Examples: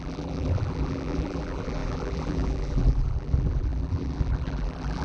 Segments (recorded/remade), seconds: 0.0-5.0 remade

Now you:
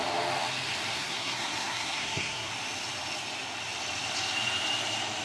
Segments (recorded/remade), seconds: 0.0-0.9 recorded; 0.9-2.5 remade; 2.5-5.2 recorded

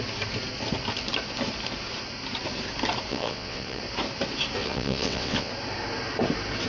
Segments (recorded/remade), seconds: 0.0-3.1 recorded; 3.1-3.8 remade; 3.8-4.6 recorded; 4.6-5.5 remade; 5.5-6.7 recorded

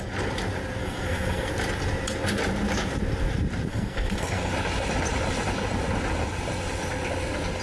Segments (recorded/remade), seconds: 0.0-0.8 recorded; 0.8-1.5 remade; 1.5-3.7 recorded; 3.7-4.5 remade; 4.5-7.6 recorded

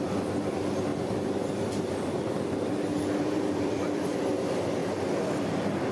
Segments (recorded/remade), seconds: 0.0-0.9 recorded; 0.9-2.4 remade; 2.4-2.9 recorded; 2.9-4.2 remade; 4.2-4.8 recorded; 4.8-5.9 remade

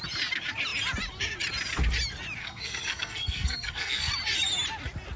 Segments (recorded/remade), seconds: 0.0-2.4 recorded; 2.4-4.1 remade; 4.1-5.2 recorded